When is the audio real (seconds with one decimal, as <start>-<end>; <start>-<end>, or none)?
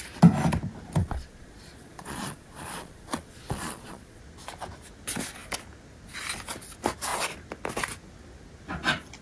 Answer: 0.0-1.0; 4.2-9.2